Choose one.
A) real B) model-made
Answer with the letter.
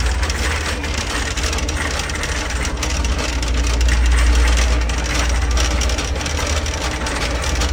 A